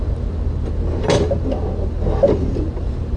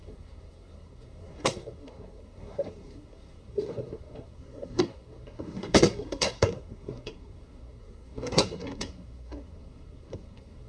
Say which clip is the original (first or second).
first